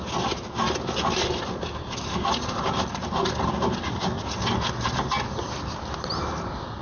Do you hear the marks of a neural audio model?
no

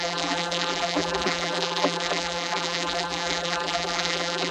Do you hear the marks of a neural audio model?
yes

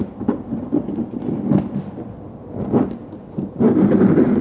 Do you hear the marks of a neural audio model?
no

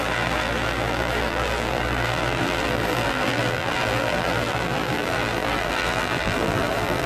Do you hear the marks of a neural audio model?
yes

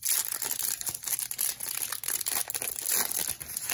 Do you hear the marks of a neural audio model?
no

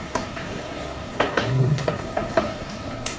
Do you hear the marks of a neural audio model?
yes